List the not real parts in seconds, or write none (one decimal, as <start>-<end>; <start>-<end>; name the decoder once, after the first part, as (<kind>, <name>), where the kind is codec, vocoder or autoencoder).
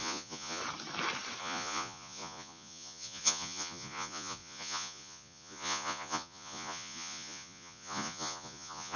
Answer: 0.0-0.6 (vocoder, Vocos); 1.4-9.0